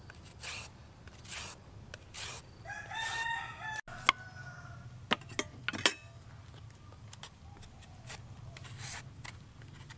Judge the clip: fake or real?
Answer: real